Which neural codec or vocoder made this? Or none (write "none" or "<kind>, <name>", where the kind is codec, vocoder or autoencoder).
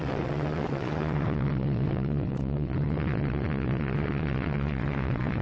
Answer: vocoder, WaveNeXt